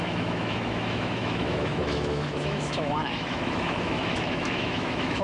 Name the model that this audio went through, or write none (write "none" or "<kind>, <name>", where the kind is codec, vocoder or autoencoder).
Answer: autoencoder, DAC-VAE